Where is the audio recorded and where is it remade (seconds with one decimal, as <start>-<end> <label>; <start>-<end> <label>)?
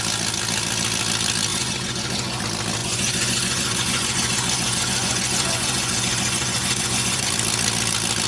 0.0-1.5 recorded; 1.5-2.4 remade; 2.4-2.8 recorded; 2.8-7.3 remade; 7.3-8.3 recorded